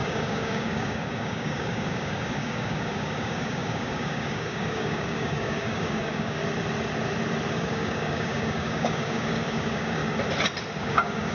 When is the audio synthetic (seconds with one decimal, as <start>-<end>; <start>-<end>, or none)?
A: 0.0-6.4; 7.5-10.0; 10.8-11.3